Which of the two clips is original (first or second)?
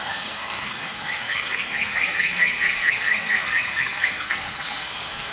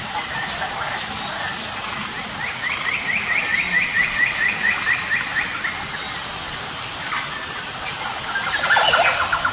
second